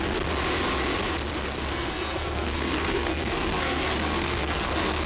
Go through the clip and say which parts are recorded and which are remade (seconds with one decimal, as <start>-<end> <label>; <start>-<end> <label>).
0.0-1.7 recorded; 1.7-5.1 remade